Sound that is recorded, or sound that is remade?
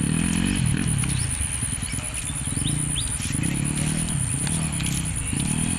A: recorded